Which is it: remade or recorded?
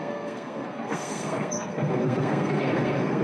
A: remade